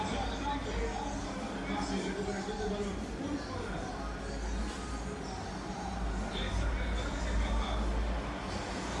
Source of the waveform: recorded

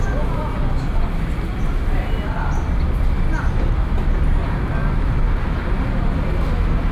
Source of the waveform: recorded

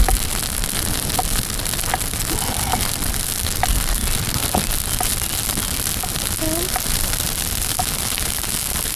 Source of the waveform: recorded